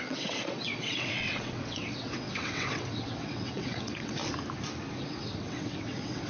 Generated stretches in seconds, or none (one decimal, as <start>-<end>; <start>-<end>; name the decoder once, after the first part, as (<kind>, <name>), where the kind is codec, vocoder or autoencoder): 0.0-4.2 (vocoder, WaveNeXt); 4.9-6.3